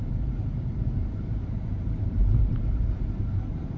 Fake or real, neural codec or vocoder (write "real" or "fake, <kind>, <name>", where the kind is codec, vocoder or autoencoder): fake, vocoder, BigVGAN v2